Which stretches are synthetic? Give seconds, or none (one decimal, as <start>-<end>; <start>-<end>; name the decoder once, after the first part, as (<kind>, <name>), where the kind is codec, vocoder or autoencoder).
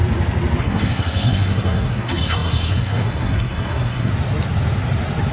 0.6-4.1 (codec, SNAC)